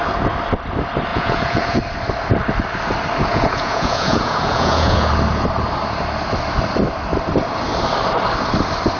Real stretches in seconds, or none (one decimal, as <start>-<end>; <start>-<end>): 0.0-1.1; 1.8-3.3; 5.1-9.0